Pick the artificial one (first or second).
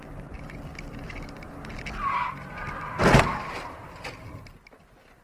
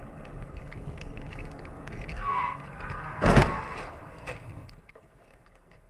second